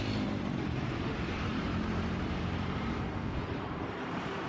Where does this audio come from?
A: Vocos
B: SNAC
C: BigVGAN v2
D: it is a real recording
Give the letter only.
C